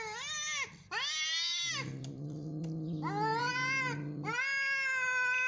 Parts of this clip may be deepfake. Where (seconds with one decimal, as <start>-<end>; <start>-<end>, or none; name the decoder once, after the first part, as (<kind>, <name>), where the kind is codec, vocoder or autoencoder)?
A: none